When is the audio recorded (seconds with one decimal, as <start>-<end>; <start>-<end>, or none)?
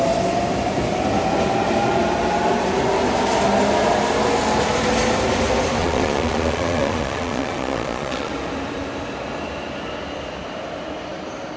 0.0-5.8; 8.3-11.6